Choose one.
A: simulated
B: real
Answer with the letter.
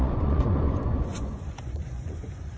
A